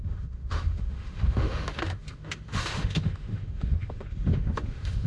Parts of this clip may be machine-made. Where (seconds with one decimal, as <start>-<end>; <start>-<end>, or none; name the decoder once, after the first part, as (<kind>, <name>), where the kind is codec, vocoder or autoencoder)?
0.0-5.1 (autoencoder, DAC-VAE)